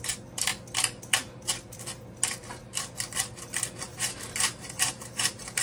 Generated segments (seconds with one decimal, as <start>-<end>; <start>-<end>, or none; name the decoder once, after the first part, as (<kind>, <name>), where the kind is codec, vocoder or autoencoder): 3.9-5.6 (vocoder, BigVGAN v2)